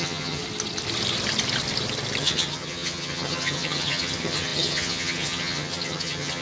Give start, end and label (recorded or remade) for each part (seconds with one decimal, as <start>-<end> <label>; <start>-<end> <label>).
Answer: 0.0-0.4 remade; 0.4-2.2 recorded; 2.2-6.4 remade